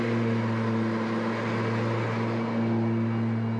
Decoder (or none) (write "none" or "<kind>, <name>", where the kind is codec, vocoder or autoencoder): none